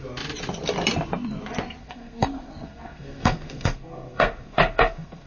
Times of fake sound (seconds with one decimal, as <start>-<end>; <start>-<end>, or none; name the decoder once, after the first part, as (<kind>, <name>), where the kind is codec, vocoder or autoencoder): 1.8-5.3 (codec, SNAC)